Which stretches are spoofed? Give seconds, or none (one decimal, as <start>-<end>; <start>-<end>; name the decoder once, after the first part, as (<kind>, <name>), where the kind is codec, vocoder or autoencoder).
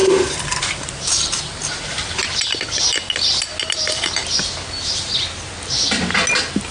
0.0-3.4 (vocoder, BigVGAN v2)